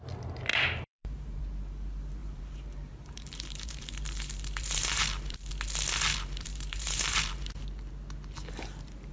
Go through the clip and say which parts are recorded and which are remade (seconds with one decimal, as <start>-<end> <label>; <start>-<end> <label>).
0.0-0.5 recorded; 0.5-1.4 remade; 1.4-2.2 recorded; 2.2-5.5 remade; 5.5-6.1 recorded; 6.1-7.6 remade; 7.6-9.1 recorded